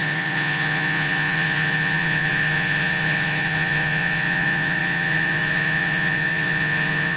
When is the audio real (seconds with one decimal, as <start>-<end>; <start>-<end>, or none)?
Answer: none